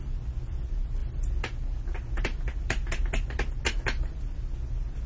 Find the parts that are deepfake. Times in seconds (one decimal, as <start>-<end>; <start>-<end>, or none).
none

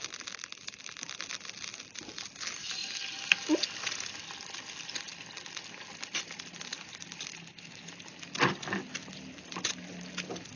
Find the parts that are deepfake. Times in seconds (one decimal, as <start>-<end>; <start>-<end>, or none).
7.3-7.9

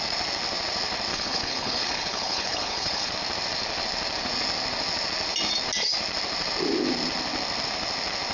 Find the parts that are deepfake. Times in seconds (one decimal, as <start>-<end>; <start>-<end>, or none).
1.1-3.1